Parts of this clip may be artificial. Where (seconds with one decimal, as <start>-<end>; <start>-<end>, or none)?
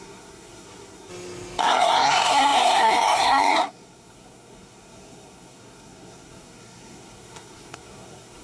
0.0-1.1; 1.6-8.4